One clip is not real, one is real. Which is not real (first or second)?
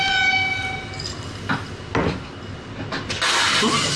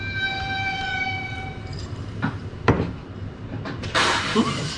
second